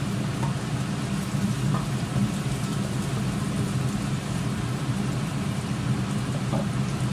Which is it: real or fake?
real